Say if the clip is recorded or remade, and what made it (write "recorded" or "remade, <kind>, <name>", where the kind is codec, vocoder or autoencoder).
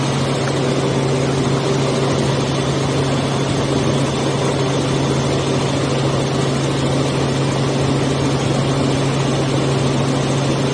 recorded